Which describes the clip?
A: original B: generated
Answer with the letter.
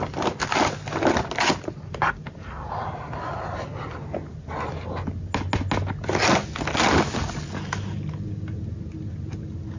A